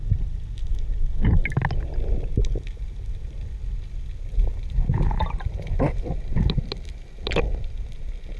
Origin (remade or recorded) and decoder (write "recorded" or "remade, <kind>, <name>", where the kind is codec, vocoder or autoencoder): recorded